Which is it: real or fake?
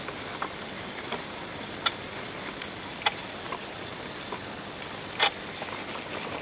real